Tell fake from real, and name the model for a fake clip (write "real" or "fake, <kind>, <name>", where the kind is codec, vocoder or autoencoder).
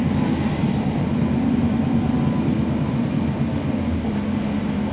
real